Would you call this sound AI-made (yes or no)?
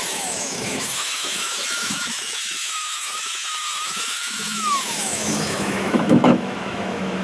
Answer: yes